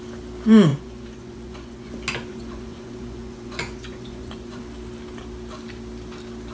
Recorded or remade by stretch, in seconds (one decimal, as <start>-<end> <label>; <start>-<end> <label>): 0.0-0.7 recorded; 0.7-1.9 remade; 1.9-2.3 recorded; 2.3-4.6 remade; 4.6-6.5 recorded